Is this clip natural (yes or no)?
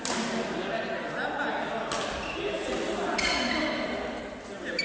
yes